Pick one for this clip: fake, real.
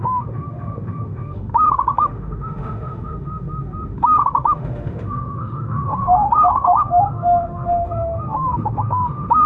fake